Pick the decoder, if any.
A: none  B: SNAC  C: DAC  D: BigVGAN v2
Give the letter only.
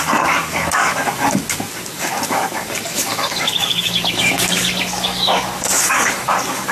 C